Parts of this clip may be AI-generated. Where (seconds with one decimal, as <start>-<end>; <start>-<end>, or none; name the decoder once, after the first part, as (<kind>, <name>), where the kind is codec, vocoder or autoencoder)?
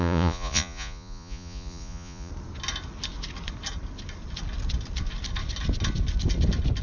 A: 0.0-2.3 (vocoder, Vocos)